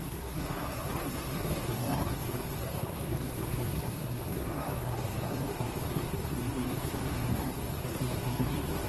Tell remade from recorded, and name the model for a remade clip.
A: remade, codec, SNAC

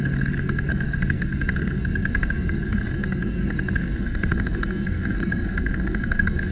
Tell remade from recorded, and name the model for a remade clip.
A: remade, codec, SNAC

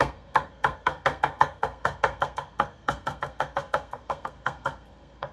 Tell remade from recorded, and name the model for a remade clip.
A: remade, codec, SNAC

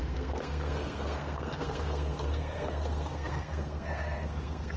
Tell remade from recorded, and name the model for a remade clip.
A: remade, codec, SNAC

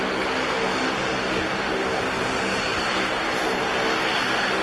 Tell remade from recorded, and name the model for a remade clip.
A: recorded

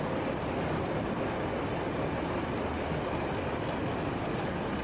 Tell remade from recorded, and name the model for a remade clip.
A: recorded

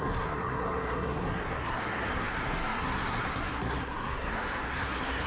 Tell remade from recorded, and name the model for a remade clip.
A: remade, codec, SNAC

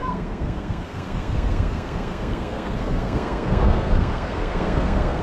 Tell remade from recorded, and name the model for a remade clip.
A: remade, codec, SNAC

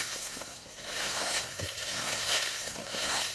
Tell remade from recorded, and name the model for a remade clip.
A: remade, codec, SNAC